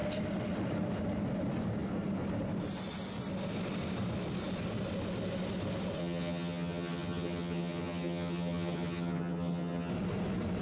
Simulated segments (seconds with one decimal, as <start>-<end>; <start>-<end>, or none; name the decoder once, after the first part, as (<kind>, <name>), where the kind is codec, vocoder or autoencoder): 6.0-9.9 (vocoder, HiFi-GAN)